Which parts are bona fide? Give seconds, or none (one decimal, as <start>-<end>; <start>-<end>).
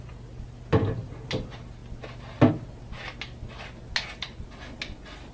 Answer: 0.0-5.3